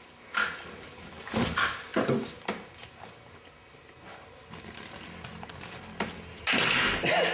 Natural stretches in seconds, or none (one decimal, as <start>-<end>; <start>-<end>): 0.0-7.3